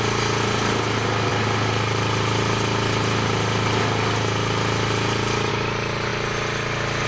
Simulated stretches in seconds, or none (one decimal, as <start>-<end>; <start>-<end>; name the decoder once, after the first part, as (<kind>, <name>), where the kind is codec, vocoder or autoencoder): none